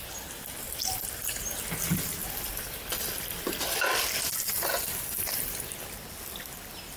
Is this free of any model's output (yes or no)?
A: yes